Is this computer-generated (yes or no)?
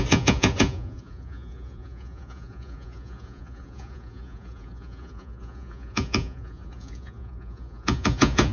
yes